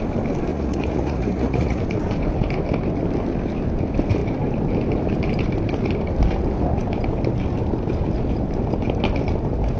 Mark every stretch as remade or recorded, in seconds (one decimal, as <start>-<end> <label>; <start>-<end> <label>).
0.0-0.5 recorded; 0.5-1.8 remade; 1.8-9.8 recorded